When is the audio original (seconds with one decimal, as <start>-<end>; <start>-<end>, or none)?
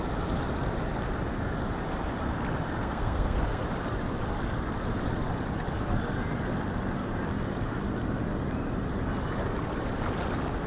0.0-2.8; 3.6-10.7